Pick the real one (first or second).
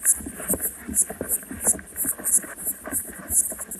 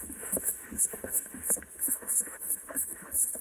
first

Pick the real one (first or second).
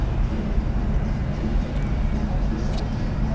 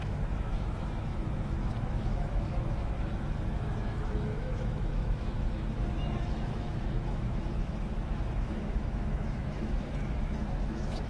first